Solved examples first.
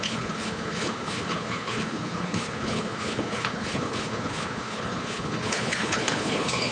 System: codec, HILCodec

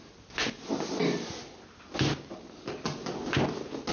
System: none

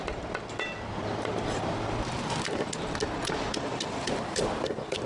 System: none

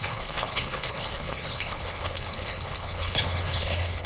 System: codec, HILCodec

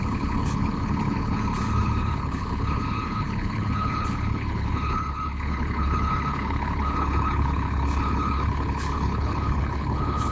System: codec, HILCodec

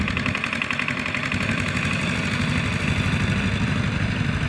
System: none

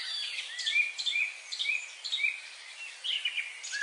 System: none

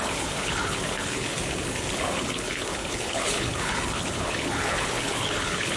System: codec, HILCodec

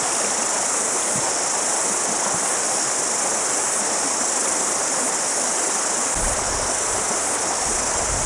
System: none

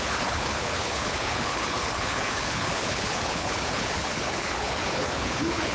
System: codec, HILCodec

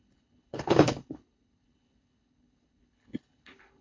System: codec, HILCodec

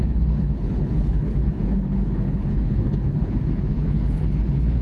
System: codec, HILCodec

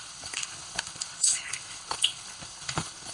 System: codec, HILCodec